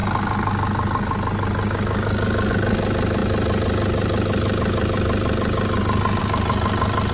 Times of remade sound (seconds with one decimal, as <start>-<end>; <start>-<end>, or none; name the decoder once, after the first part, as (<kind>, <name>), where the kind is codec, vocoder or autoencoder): none